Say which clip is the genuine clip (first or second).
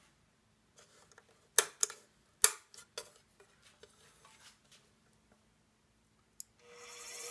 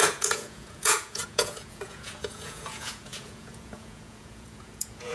first